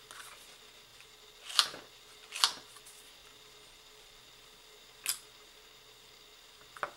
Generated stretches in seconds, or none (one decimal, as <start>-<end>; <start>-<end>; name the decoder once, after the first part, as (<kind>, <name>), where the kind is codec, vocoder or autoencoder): 0.9-2.8 (vocoder, BigVGAN v2); 3.2-4.2